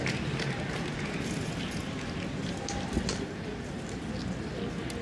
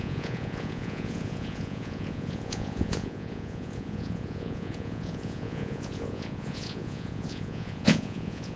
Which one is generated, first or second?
second